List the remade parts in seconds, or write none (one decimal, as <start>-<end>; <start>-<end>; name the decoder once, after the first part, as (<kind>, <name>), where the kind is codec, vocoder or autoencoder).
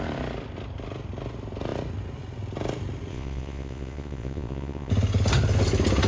3.1-4.9 (vocoder, Vocos)